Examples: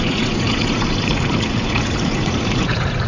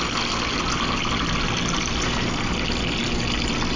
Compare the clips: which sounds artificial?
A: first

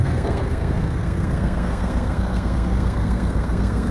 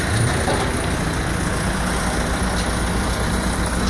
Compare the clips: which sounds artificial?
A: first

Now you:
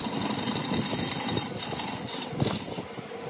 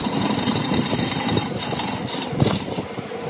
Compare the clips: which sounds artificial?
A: second